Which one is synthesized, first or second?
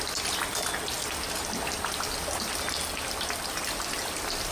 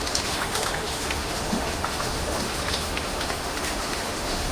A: second